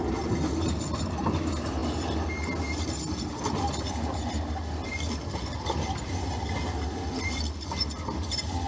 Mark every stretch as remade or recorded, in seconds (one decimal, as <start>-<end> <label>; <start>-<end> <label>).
0.0-8.7 recorded